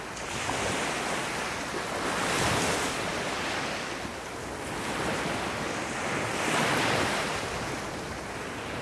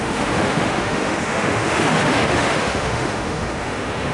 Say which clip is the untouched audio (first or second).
first